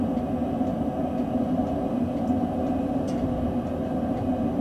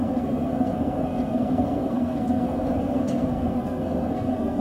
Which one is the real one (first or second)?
first